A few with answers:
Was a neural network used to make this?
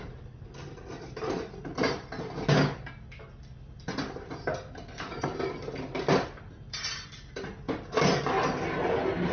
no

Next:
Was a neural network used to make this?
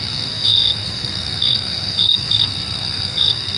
yes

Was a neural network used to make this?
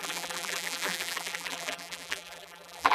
yes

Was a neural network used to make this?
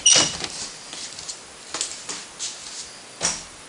no